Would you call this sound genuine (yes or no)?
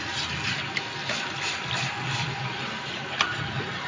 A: yes